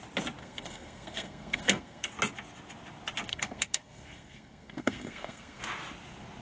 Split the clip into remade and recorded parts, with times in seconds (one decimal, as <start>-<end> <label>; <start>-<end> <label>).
0.0-0.4 recorded; 0.4-2.1 remade; 2.1-3.3 recorded; 3.3-5.6 remade; 5.6-6.4 recorded